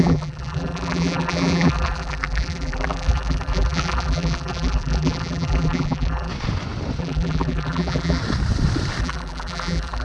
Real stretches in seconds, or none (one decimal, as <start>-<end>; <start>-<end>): 6.3-7.0; 8.2-9.0